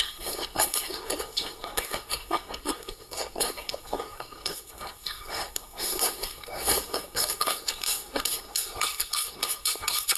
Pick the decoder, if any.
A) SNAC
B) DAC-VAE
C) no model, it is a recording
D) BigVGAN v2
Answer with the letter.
A